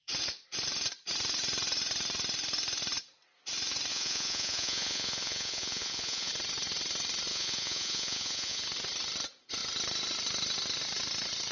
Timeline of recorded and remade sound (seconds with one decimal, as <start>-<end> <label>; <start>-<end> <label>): 0.0-3.9 recorded; 3.9-6.3 remade; 6.3-7.3 recorded; 7.3-8.6 remade; 8.6-11.5 recorded

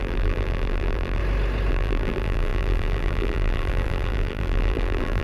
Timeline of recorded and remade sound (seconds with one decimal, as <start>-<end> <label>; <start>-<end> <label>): 0.0-1.2 remade; 1.2-1.7 recorded; 1.7-5.2 remade

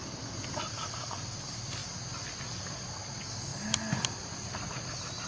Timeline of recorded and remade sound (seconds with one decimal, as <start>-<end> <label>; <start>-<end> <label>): 0.0-5.3 recorded

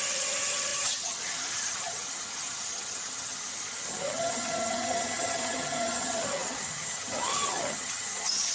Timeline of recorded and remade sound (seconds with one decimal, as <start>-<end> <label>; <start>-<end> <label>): 0.0-8.5 remade

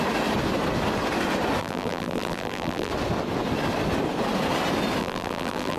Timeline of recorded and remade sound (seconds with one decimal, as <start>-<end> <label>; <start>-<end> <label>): 0.0-1.6 recorded; 1.6-2.9 remade; 2.9-5.0 recorded; 5.0-5.8 remade